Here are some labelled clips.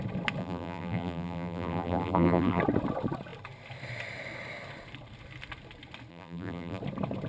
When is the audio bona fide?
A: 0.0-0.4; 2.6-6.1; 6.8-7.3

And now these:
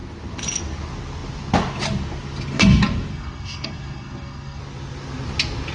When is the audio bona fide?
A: 0.0-3.1; 4.6-5.7

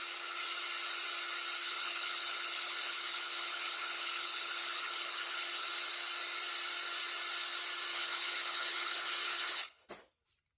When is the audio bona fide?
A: 0.0-1.6; 5.7-7.9; 9.9-10.6

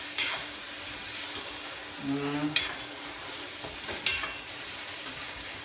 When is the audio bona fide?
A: 0.6-1.4; 1.8-5.0

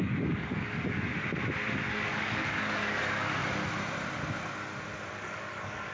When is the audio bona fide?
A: 1.1-1.9; 3.4-5.2